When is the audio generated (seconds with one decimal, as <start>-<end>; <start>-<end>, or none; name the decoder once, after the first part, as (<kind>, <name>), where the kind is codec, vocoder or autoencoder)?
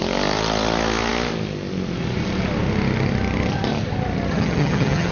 4.3-5.1 (vocoder, HiFi-GAN)